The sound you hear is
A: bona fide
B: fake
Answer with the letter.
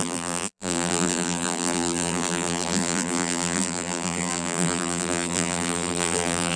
B